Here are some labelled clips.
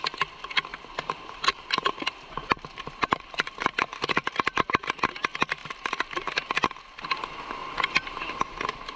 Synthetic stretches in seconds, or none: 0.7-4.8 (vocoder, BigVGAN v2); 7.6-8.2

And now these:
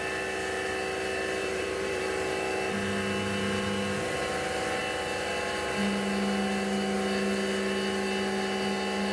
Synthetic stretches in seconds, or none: 1.4-2.0 (vocoder, BigVGAN v2)

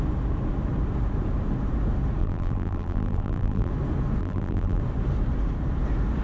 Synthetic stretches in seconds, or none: 2.2-3.7 (vocoder, BigVGAN v2); 4.2-4.8

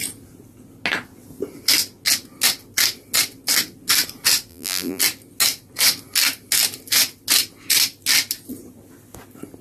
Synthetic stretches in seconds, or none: 4.5-5.0 (vocoder, BigVGAN v2)

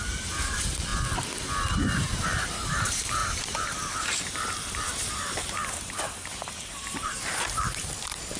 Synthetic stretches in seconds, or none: 0.0-0.9 (vocoder, BigVGAN v2); 1.8-8.4

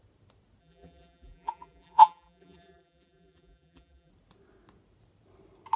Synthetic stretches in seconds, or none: 0.6-4.1 (vocoder, BigVGAN v2)